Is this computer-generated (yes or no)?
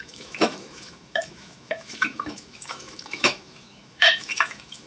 yes